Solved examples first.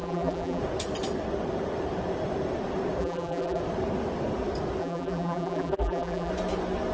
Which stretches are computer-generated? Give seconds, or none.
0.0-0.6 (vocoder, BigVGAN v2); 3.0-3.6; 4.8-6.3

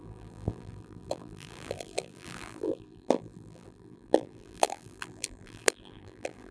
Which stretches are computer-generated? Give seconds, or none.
0.0-6.5 (vocoder, BigVGAN v2)